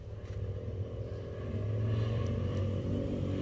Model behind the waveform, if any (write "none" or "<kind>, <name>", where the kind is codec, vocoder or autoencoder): none